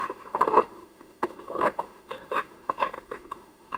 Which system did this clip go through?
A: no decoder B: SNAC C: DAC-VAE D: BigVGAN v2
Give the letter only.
C